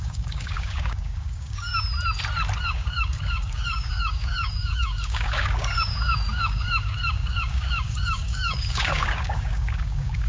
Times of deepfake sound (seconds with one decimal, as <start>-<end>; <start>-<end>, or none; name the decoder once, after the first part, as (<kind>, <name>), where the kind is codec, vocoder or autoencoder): 0.0-1.7 (codec, DAC); 2.6-10.3